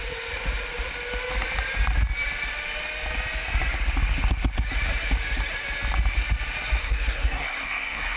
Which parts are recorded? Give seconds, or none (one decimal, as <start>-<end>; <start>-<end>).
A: 0.0-6.8